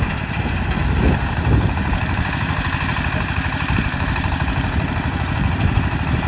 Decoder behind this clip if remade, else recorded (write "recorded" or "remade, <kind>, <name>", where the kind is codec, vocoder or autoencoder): remade, vocoder, BigVGAN v2